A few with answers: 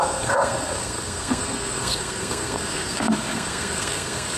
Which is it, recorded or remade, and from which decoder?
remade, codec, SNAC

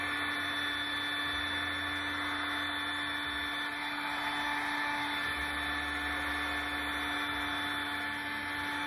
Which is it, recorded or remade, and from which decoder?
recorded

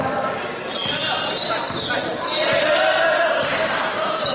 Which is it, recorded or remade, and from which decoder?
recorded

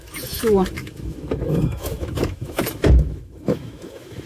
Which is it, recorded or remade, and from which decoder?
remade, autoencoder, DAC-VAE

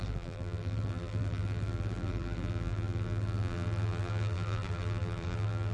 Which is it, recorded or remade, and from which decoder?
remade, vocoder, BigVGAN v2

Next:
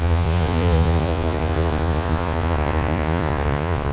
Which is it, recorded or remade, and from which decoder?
remade, vocoder, Vocos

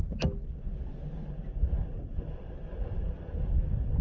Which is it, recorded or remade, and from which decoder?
recorded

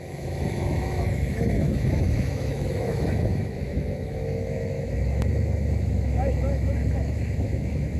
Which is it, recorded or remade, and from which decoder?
remade, autoencoder, DAC-VAE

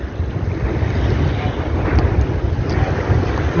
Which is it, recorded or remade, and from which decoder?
recorded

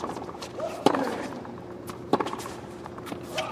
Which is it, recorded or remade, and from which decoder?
remade, vocoder, BigVGAN v2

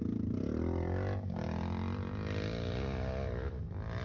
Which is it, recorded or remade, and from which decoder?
recorded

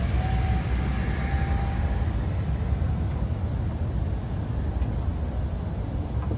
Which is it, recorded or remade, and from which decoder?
recorded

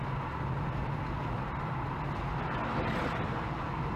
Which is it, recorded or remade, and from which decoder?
recorded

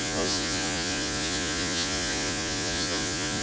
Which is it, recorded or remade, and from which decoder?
remade, vocoder, Vocos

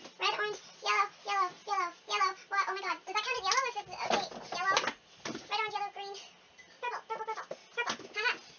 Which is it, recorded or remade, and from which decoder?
recorded